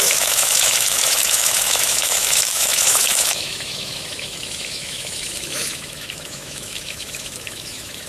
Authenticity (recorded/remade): remade